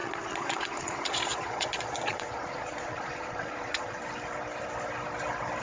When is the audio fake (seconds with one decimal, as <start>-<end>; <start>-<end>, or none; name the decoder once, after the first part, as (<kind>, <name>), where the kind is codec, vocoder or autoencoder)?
0.0-4.0 (vocoder, Vocos)